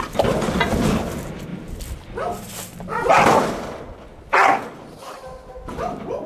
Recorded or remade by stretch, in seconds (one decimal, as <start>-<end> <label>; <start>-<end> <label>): 0.0-6.3 recorded